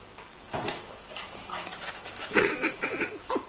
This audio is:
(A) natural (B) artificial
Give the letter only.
B